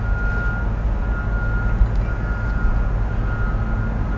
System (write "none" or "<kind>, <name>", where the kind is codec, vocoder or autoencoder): none